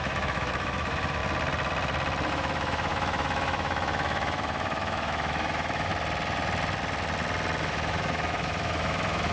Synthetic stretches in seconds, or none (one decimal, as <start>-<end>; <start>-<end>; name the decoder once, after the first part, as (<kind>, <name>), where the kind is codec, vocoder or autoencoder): 0.0-1.2 (autoencoder, DAC-VAE); 2.3-5.9; 7.6-9.3